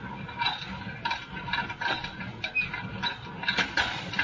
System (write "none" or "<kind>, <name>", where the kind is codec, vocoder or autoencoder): none